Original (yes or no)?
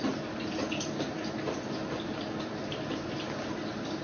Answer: yes